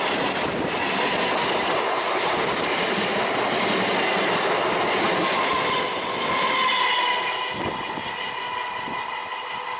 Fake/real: real